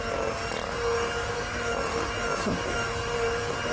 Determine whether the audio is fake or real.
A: real